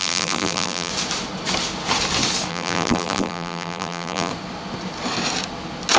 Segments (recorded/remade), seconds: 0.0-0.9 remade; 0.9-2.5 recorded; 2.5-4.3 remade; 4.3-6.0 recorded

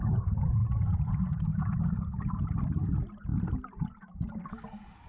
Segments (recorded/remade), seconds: 0.0-1.5 recorded; 1.5-2.6 remade; 2.6-3.3 recorded; 3.3-4.5 remade; 4.5-5.1 recorded

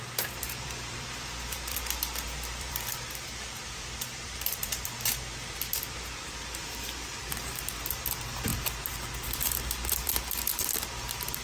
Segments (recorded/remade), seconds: 0.0-8.5 remade; 8.5-9.9 recorded; 9.9-11.4 remade